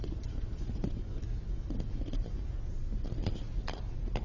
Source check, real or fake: real